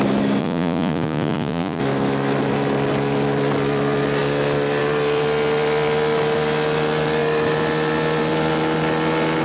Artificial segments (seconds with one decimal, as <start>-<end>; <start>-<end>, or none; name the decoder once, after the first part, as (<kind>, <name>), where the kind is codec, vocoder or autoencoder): 0.4-1.8 (vocoder, Vocos)